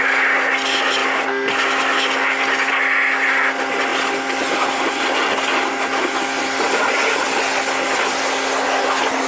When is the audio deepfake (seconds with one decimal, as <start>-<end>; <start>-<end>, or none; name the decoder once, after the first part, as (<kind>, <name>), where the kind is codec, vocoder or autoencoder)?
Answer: none